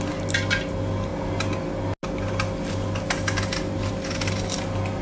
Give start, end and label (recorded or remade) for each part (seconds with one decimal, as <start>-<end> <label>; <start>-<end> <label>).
0.0-5.0 recorded